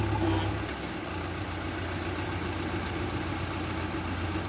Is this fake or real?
real